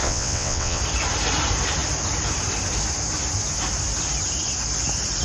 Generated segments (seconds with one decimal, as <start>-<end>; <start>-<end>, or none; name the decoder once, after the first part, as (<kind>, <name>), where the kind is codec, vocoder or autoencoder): 0.0-0.8 (vocoder, WaveNeXt)